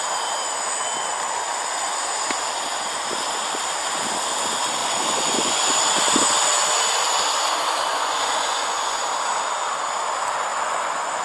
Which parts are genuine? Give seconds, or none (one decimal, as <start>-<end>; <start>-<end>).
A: 0.0-4.8; 5.7-7.9; 9.0-10.5